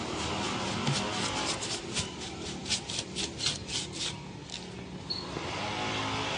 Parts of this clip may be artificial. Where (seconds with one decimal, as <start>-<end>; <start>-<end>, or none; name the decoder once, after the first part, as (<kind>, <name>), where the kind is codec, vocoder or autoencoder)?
none